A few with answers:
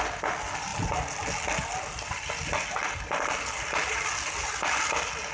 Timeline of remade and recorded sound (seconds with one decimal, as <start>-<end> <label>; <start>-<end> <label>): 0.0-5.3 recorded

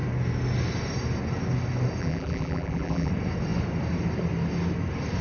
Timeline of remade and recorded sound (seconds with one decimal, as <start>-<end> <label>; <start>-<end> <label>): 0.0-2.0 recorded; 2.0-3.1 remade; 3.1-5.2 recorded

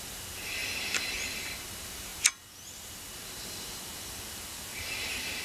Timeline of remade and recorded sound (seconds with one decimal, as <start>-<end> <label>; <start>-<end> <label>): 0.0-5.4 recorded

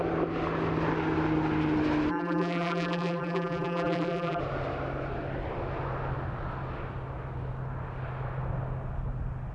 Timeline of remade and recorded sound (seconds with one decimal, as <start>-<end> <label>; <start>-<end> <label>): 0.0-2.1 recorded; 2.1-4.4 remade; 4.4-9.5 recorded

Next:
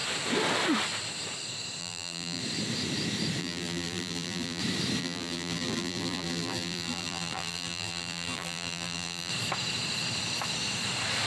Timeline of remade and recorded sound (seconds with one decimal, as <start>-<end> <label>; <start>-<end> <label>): 0.0-1.8 recorded; 1.8-2.4 remade; 2.4-3.4 recorded; 3.4-4.6 remade; 4.6-5.0 recorded; 5.0-9.3 remade; 9.3-11.3 recorded

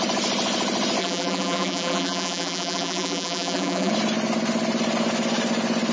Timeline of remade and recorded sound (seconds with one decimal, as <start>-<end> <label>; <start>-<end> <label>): 0.0-1.0 recorded; 1.0-3.9 remade; 3.9-5.9 recorded

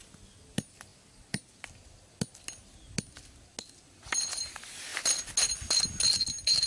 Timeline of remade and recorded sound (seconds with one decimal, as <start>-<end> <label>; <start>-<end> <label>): 0.0-6.7 recorded

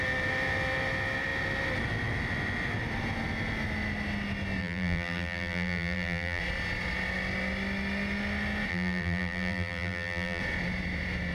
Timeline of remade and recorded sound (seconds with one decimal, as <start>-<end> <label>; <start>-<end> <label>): 0.0-4.6 recorded; 4.6-6.4 remade; 6.4-8.7 recorded; 8.7-10.4 remade; 10.4-11.3 recorded